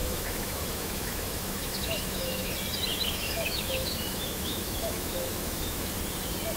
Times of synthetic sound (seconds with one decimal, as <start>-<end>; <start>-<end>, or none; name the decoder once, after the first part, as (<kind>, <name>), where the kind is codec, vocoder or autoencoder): 0.0-2.5 (autoencoder, DAC-VAE); 2.9-5.9